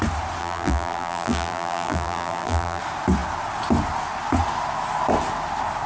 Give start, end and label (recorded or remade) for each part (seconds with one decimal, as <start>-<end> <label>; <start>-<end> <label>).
0.0-0.4 recorded; 0.4-2.8 remade; 2.8-5.9 recorded